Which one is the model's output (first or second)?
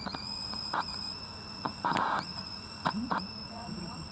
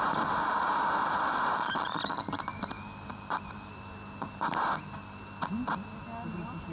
first